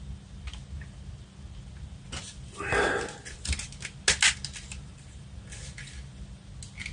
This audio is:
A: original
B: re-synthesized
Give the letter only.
A